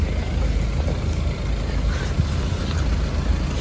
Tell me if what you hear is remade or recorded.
recorded